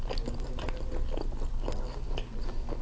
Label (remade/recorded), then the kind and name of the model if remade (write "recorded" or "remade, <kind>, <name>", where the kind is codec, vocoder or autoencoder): recorded